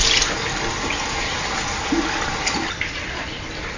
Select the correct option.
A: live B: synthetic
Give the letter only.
A